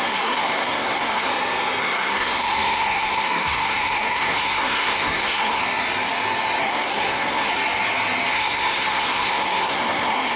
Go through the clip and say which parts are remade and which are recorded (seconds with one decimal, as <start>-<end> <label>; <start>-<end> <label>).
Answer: 0.0-1.3 remade; 1.3-1.8 recorded; 1.8-5.6 remade; 5.6-6.6 recorded; 6.6-7.5 remade; 7.5-8.3 recorded; 8.3-10.4 remade

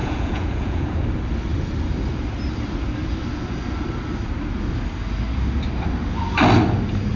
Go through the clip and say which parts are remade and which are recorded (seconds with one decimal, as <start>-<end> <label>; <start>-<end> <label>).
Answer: 0.0-1.0 remade; 1.0-7.2 recorded

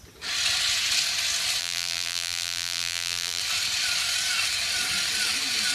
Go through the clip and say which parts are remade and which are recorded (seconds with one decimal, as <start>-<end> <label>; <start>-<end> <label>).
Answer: 0.0-1.6 recorded; 1.6-3.4 remade; 3.4-5.7 recorded